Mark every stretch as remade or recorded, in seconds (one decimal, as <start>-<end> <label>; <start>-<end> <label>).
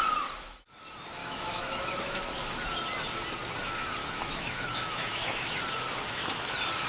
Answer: 0.0-1.2 recorded; 1.2-2.2 remade; 2.2-4.0 recorded; 4.0-5.6 remade; 5.6-6.9 recorded